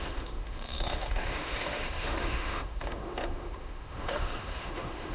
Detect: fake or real fake